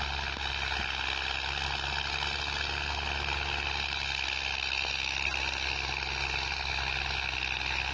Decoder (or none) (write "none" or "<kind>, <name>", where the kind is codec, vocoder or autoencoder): none